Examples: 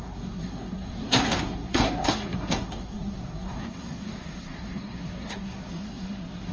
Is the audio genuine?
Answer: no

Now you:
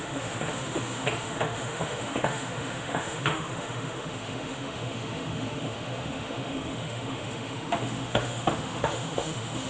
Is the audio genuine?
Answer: no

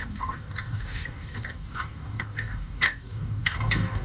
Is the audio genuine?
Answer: no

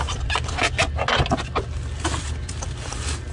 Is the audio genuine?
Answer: yes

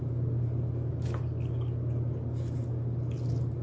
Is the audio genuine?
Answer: yes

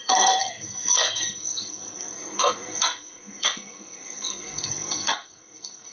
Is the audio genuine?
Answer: no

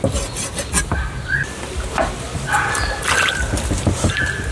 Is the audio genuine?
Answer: yes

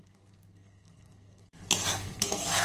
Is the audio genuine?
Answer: no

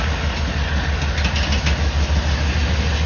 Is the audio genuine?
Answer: yes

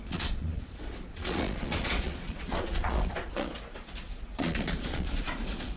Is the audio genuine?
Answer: no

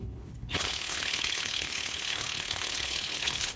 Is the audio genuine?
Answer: no